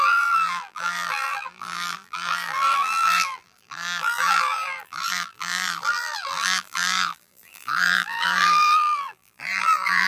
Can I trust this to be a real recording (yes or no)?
no